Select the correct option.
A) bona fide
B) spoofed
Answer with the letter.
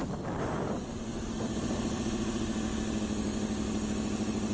A